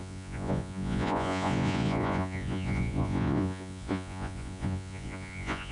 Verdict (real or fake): fake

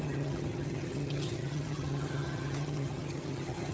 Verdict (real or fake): fake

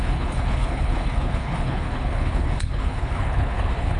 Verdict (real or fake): fake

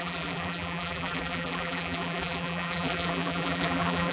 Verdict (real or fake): fake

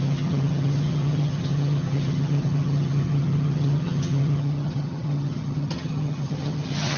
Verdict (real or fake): fake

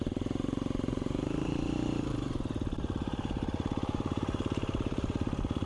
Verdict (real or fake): fake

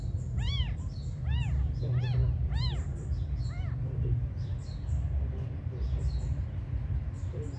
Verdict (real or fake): real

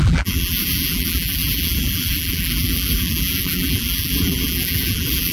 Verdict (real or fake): fake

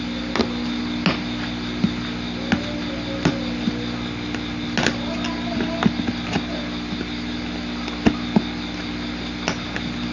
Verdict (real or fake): real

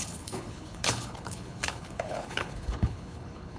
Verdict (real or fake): fake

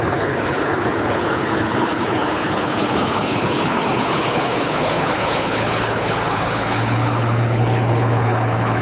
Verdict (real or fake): fake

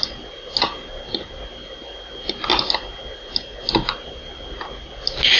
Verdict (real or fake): real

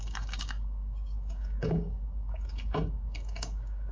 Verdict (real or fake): fake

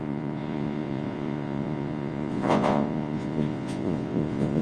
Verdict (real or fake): fake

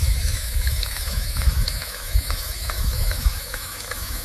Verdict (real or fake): fake